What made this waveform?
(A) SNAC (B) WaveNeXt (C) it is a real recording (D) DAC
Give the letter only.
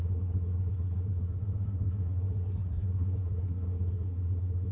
A